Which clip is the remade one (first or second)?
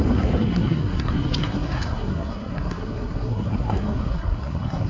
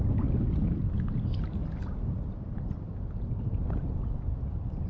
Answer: first